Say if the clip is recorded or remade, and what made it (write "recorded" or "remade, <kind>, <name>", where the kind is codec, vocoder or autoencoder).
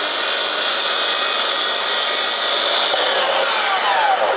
recorded